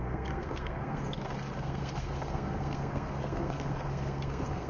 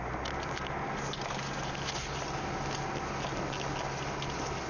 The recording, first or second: second